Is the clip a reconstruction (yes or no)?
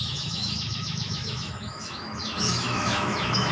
yes